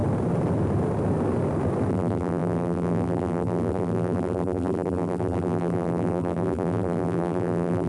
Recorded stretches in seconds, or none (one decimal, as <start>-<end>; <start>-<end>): 0.0-1.9